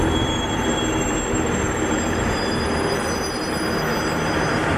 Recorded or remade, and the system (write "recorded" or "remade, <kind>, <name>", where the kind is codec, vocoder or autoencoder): remade, vocoder, BigVGAN v2